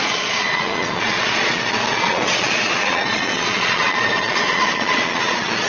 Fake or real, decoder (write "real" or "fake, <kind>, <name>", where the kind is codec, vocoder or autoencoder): fake, vocoder, Vocos